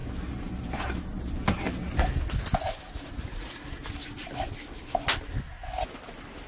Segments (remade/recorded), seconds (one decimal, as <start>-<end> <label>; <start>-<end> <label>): 0.0-6.5 recorded